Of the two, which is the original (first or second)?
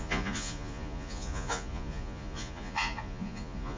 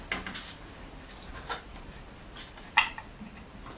second